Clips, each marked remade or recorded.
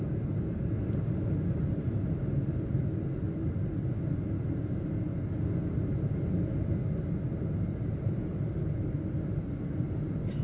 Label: recorded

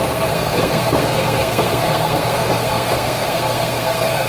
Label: remade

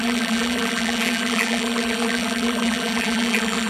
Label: remade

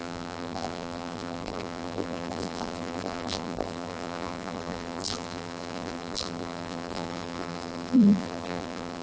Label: remade